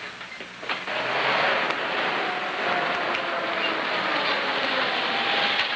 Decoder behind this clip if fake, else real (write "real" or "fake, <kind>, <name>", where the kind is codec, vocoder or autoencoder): real